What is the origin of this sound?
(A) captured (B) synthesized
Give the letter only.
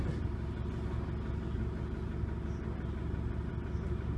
A